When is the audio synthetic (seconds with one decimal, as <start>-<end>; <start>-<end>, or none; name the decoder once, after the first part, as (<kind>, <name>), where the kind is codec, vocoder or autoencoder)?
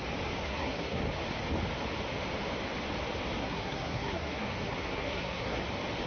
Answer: 0.4-1.0 (codec, SNAC); 3.4-5.6